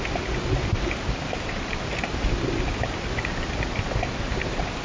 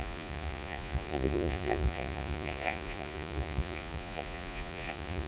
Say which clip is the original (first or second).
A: first